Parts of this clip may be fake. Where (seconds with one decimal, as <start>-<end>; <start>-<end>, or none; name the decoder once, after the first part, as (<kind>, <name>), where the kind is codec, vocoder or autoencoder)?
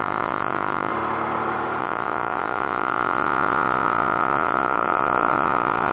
0.0-0.9 (vocoder, Vocos); 1.8-5.9